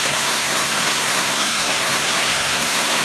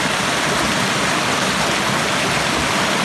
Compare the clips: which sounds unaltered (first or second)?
second